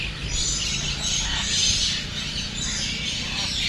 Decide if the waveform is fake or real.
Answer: real